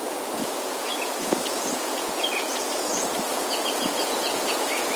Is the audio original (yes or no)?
no